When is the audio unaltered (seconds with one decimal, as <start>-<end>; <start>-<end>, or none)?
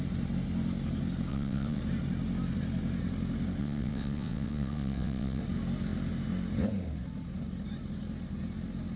0.0-1.3; 1.8-3.6; 5.4-9.0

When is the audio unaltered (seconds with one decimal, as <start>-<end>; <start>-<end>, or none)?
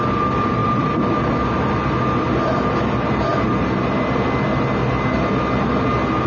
0.0-0.6; 1.3-6.3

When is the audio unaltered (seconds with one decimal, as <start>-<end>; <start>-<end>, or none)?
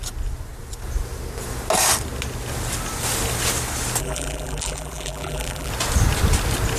0.0-4.0; 5.7-6.8